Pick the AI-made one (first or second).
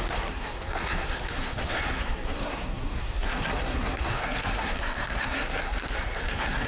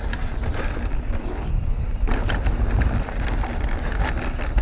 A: first